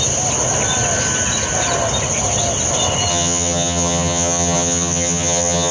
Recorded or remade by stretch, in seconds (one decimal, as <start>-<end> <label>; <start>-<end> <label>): 0.0-3.1 recorded; 3.1-5.7 remade